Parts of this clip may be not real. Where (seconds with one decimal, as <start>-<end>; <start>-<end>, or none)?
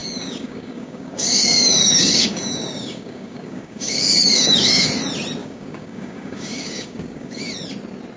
0.0-4.9; 5.4-7.4